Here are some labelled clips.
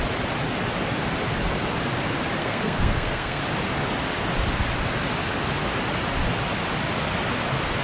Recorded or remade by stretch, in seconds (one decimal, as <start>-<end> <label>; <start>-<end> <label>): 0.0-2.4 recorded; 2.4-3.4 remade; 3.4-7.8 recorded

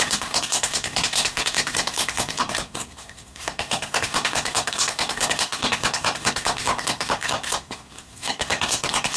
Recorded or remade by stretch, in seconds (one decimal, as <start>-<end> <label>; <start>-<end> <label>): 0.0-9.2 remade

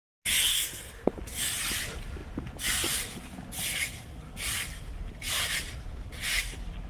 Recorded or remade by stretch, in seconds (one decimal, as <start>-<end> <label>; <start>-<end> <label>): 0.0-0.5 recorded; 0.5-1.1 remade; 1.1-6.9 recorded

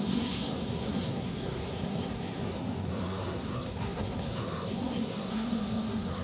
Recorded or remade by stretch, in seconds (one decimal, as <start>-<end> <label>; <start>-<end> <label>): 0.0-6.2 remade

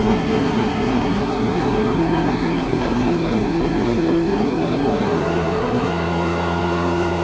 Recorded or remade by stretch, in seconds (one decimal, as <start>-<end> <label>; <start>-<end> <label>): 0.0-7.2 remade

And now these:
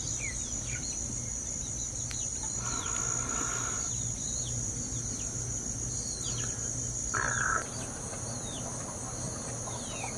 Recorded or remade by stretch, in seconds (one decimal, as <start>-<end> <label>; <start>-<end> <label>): 0.0-10.2 recorded

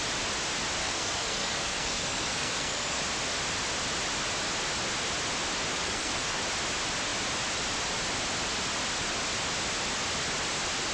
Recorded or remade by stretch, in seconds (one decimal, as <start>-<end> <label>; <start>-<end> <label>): 0.0-0.8 recorded; 0.8-3.0 remade; 3.0-5.7 recorded; 5.7-6.4 remade; 6.4-10.9 recorded

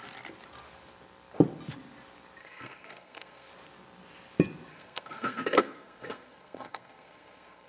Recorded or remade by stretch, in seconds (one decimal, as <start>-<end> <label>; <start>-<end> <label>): 0.0-2.4 recorded; 2.4-3.5 remade; 3.5-4.7 recorded; 4.7-7.7 remade